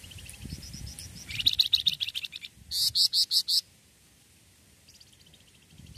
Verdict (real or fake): real